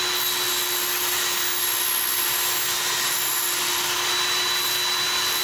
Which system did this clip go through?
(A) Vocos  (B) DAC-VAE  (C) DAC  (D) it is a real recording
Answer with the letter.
D